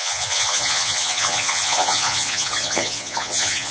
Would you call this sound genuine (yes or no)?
no